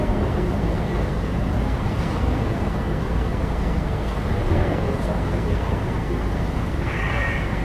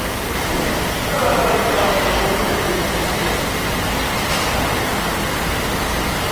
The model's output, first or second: first